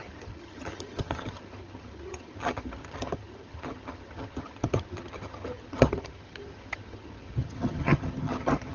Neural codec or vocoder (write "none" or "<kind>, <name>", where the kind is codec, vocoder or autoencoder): vocoder, HiFi-GAN